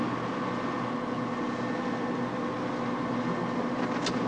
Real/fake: real